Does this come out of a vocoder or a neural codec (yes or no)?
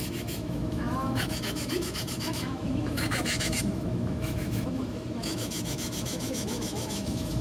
yes